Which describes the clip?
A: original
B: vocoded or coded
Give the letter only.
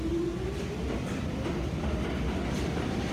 A